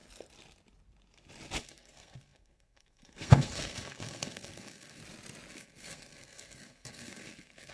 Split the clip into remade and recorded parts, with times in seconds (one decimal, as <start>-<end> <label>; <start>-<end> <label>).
0.0-1.6 recorded; 1.6-5.0 remade; 5.0-5.5 recorded; 5.5-7.7 remade